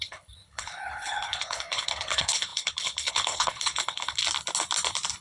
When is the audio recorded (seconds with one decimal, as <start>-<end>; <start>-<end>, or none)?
4.2-5.2